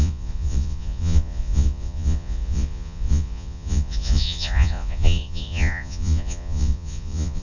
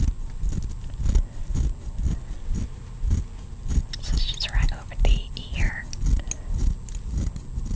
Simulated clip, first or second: first